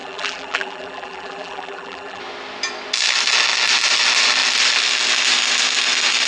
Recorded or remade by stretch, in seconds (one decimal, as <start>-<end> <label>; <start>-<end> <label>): 0.0-2.2 remade; 2.2-6.3 recorded